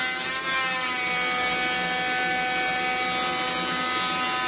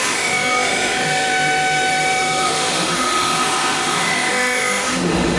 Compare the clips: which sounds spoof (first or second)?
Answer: second